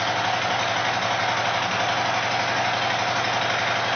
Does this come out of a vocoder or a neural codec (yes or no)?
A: no